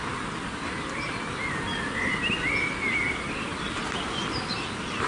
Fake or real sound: real